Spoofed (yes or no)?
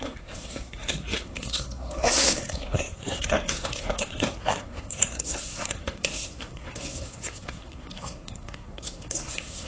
yes